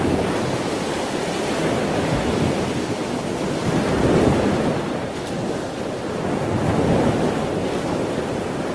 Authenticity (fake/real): real